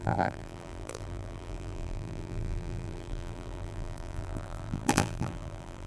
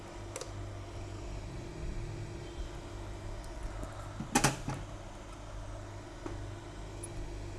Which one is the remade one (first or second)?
first